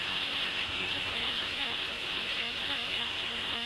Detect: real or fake fake